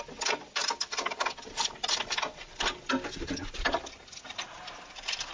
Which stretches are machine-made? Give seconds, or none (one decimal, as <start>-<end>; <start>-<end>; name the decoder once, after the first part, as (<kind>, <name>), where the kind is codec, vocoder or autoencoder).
none